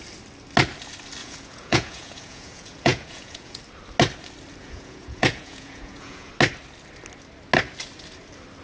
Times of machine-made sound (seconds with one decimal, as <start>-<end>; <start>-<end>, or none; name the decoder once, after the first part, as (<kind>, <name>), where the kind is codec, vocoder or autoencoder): 1.2-3.6 (vocoder, Vocos); 4.6-6.3

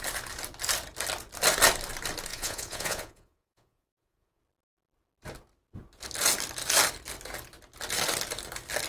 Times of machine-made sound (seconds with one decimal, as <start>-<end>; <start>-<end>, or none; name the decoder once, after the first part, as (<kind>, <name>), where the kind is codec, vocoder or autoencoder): 2.3-4.4 (vocoder, Vocos)